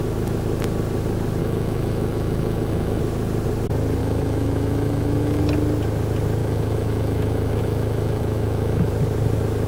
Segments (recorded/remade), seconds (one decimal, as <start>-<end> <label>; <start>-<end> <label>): 0.0-1.4 recorded; 1.4-3.0 remade; 3.0-4.0 recorded; 4.0-5.4 remade; 5.4-6.4 recorded; 6.4-8.9 remade; 8.9-9.7 recorded

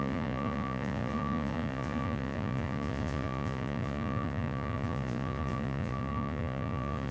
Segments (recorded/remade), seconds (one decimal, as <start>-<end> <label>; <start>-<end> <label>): 0.0-7.1 remade

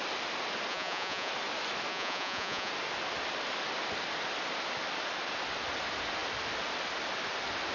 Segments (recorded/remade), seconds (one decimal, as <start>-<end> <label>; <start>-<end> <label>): 0.0-0.7 recorded; 0.7-1.3 remade; 1.3-1.9 recorded; 1.9-2.7 remade; 2.7-7.7 recorded

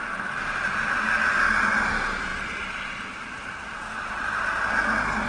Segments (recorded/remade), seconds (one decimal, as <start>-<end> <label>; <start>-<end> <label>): 0.0-5.3 recorded

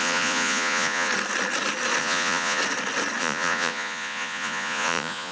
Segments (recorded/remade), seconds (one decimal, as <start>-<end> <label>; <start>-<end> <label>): 0.0-1.1 remade; 1.1-2.0 recorded; 2.0-2.6 remade; 2.6-3.2 recorded; 3.2-5.3 remade

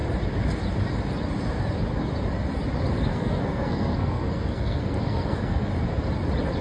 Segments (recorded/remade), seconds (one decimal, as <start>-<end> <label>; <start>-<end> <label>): 0.0-3.1 recorded; 3.1-5.7 remade; 5.7-6.6 recorded

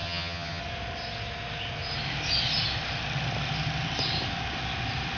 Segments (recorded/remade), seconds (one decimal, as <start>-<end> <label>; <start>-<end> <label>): 0.0-0.6 remade; 0.6-5.2 recorded

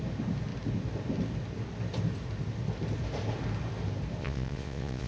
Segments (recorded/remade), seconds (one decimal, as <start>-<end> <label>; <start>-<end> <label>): 0.0-4.2 recorded; 4.2-5.1 remade